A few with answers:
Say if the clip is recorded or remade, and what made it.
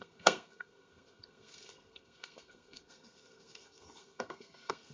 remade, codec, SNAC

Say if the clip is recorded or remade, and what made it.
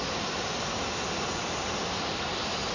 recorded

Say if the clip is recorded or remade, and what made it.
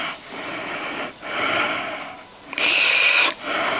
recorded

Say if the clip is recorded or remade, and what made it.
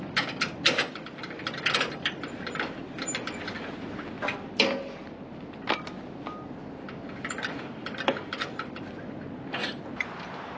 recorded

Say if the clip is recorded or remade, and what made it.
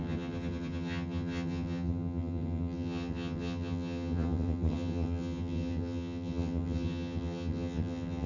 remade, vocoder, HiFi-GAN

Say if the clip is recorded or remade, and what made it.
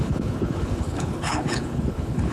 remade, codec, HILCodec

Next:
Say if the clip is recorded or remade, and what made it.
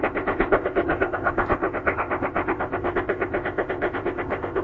remade, codec, ZipCodec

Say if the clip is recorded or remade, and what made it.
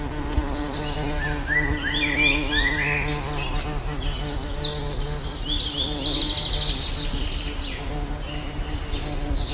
recorded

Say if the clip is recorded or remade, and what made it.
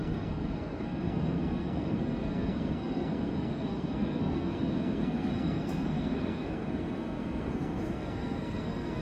remade, codec, SNAC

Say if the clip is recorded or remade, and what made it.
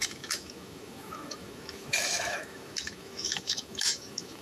remade, autoencoder, DAC-VAE